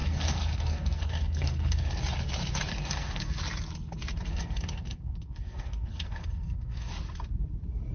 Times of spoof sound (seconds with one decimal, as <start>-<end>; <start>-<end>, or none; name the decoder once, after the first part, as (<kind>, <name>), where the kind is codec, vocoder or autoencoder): 0.0-2.0 (codec, SNAC); 2.7-3.4; 4.3-6.9